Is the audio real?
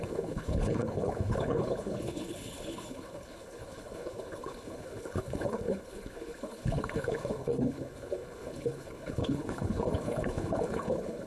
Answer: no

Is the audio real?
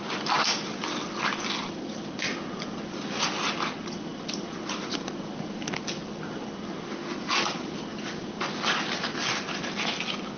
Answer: yes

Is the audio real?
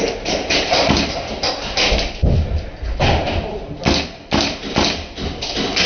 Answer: yes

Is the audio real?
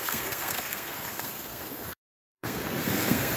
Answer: no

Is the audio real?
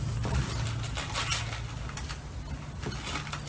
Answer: yes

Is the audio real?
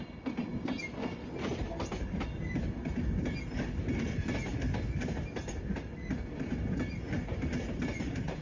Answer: yes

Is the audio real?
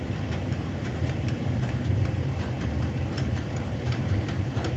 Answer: no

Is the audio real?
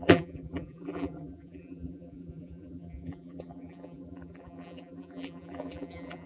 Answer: no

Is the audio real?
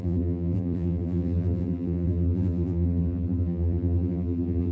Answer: no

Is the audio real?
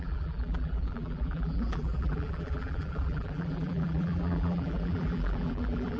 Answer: no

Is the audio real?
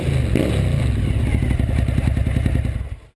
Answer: yes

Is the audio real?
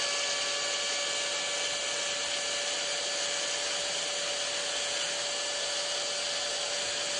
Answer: yes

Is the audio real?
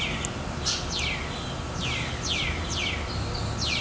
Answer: yes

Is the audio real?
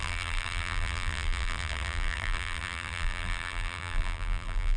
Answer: no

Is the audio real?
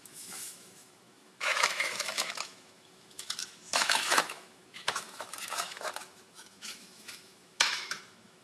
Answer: no